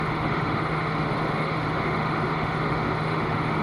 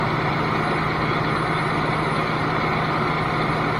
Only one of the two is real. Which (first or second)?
second